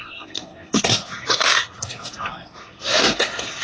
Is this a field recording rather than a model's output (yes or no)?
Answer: no